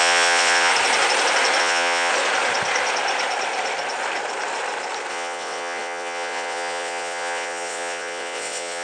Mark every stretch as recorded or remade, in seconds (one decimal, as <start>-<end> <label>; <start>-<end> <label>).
0.0-0.7 remade; 0.7-1.6 recorded; 1.6-2.1 remade; 2.1-5.1 recorded; 5.1-8.8 remade